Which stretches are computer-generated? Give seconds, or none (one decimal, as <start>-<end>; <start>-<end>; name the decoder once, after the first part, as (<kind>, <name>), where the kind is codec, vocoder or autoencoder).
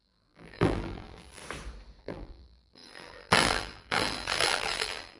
0.0-1.4 (vocoder, BigVGAN v2); 2.0-5.2